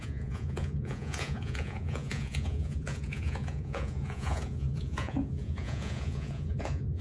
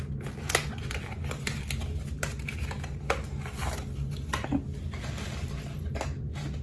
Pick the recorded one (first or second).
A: second